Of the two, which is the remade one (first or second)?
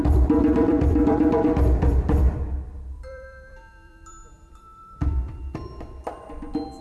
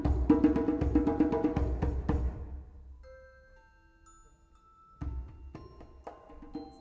first